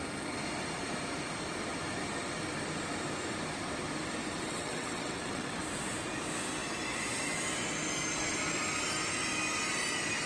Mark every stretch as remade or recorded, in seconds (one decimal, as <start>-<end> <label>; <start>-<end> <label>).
0.0-4.3 recorded; 4.3-5.6 remade; 5.6-10.3 recorded